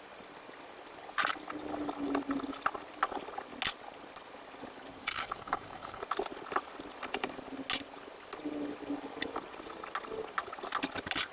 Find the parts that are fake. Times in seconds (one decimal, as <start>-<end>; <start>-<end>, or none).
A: 4.9-6.0